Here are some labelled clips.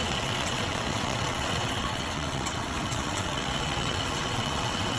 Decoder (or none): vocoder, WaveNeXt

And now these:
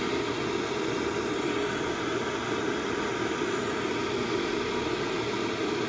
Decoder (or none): none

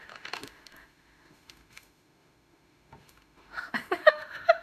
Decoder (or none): autoencoder, DAC-VAE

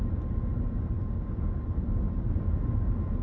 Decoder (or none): none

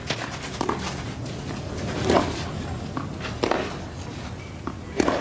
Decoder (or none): none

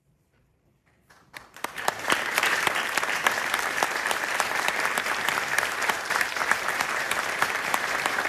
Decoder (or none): vocoder, BigVGAN v2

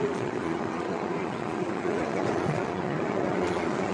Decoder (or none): vocoder, Vocos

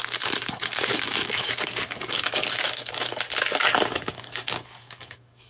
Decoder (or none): codec, DAC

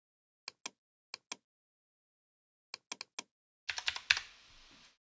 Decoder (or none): none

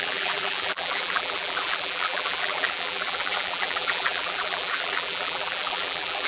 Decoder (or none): vocoder, BigVGAN v2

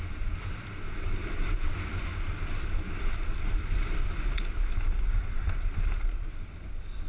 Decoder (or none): none